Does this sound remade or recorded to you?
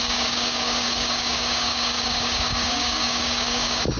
remade